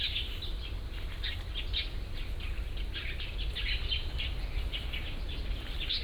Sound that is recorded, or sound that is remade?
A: recorded